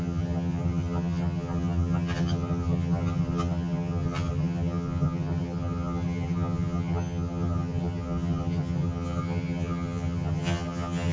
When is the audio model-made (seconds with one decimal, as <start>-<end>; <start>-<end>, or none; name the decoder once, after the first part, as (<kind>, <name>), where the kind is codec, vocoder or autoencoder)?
0.0-11.1 (vocoder, HiFi-GAN)